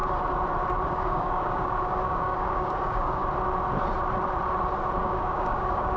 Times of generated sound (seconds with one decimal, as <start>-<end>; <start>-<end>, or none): 0.9-3.2; 5.0-6.0